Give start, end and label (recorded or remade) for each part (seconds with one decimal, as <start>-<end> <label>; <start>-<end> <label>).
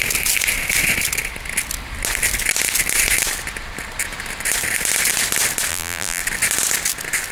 0.0-5.7 recorded; 5.7-6.2 remade; 6.2-7.3 recorded